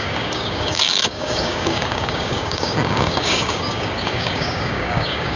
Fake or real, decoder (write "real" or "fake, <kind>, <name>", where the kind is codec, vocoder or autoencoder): fake, codec, DAC